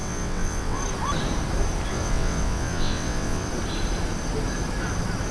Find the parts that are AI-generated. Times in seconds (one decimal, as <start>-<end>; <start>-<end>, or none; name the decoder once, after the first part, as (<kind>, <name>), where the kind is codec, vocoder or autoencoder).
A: 0.0-0.8 (vocoder, WaveNeXt); 1.9-3.5